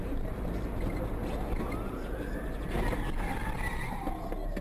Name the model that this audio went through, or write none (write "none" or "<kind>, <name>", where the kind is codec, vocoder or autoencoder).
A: none